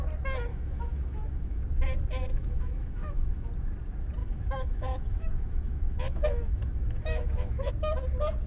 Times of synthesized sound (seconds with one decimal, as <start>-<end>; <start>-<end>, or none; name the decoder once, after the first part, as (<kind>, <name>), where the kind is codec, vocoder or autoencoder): 0.5-1.6 (autoencoder, DAC-VAE); 2.3-3.5; 4.2-7.7